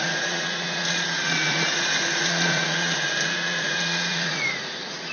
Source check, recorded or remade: remade